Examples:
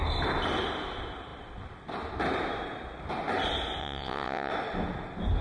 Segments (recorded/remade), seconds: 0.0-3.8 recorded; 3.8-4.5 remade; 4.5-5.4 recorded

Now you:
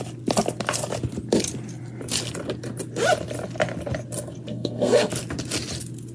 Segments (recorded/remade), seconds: 0.0-4.5 recorded; 4.5-5.1 remade; 5.1-6.1 recorded

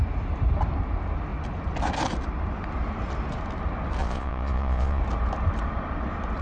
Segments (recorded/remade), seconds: 0.0-4.0 recorded; 4.0-5.0 remade; 5.0-6.4 recorded

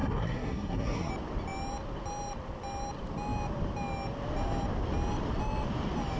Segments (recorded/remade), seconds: 0.0-1.1 remade; 1.1-6.2 recorded

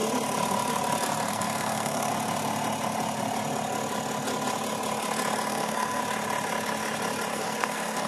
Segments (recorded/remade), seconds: 0.0-1.3 recorded; 1.3-2.1 remade; 2.1-5.5 recorded; 5.5-6.0 remade; 6.0-7.3 recorded; 7.3-8.1 remade

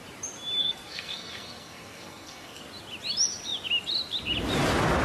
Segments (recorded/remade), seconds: 0.0-0.6 recorded; 0.6-2.6 remade; 2.6-5.0 recorded

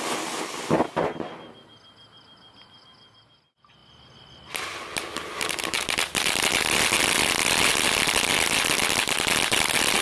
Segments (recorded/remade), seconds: 0.0-10.0 recorded

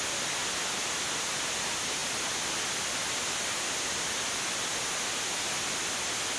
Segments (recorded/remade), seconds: 0.0-6.4 recorded